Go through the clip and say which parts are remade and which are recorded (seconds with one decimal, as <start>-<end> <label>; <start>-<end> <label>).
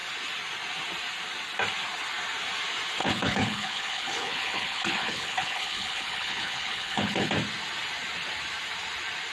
0.0-3.0 recorded; 3.0-7.3 remade; 7.3-9.3 recorded